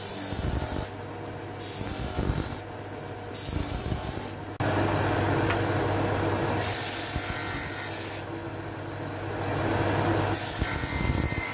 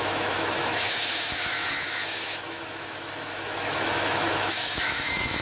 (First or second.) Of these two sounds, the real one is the first